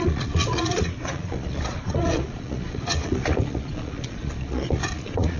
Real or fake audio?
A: fake